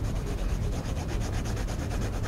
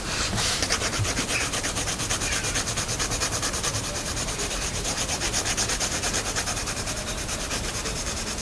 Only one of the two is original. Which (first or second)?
first